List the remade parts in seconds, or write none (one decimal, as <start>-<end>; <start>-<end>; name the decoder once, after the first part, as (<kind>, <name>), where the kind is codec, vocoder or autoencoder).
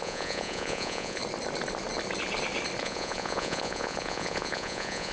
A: 0.0-1.2 (vocoder, Vocos); 2.8-5.1